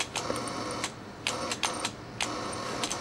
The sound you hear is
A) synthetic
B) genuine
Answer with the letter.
B